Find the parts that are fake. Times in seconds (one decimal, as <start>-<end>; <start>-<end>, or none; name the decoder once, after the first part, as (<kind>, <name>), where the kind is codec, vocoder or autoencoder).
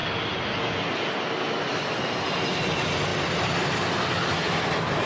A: none